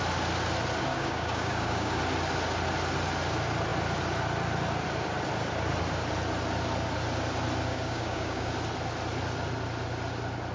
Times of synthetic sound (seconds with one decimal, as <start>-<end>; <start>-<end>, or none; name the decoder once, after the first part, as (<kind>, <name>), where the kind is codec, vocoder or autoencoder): 0.9-2.0 (codec, DAC); 7.7-8.5